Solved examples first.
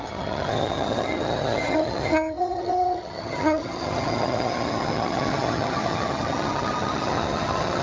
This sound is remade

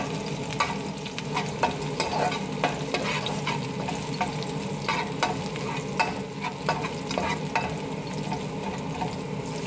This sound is recorded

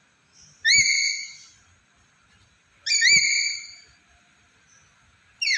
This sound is recorded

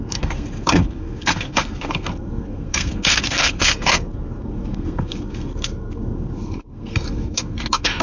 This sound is remade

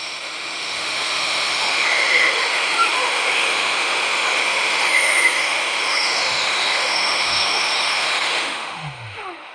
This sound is remade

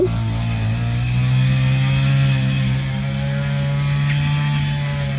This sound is recorded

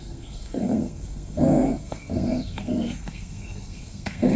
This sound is remade